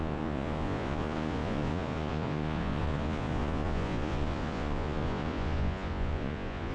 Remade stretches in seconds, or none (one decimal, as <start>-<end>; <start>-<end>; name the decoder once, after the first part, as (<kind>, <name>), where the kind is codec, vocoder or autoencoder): 0.0-6.7 (vocoder, Vocos)